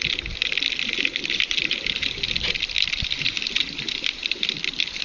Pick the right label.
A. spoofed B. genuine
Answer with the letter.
B